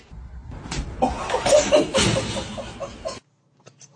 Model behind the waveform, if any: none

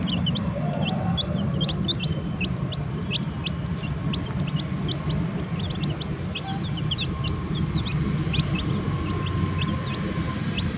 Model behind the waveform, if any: none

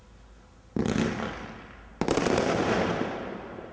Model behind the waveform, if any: none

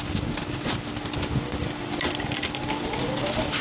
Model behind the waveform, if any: none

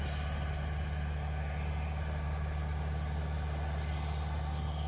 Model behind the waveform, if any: none